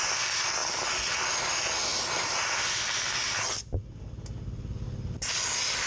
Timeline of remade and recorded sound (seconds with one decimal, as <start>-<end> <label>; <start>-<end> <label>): 0.0-1.9 recorded; 1.9-2.8 remade; 2.8-5.9 recorded